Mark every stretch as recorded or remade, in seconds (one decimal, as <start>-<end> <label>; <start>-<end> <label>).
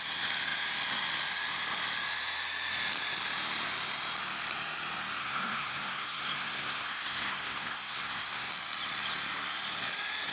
0.0-5.2 recorded; 5.2-8.5 remade; 8.5-10.3 recorded